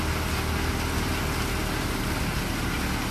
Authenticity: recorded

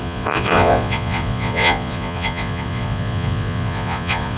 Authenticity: remade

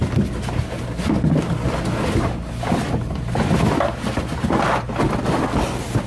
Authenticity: recorded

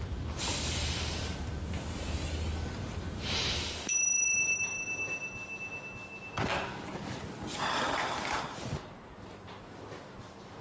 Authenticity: recorded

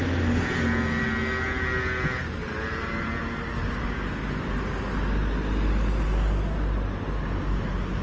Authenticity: recorded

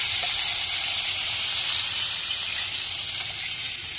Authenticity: recorded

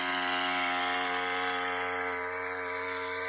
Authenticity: recorded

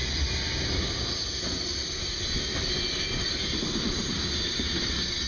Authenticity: recorded